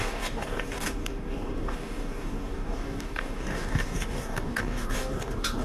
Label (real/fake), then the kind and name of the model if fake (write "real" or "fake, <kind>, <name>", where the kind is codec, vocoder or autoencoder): fake, codec, DAC